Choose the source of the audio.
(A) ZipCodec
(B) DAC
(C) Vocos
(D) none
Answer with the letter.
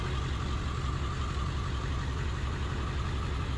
D